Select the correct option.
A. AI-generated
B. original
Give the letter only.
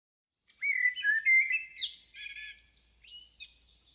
B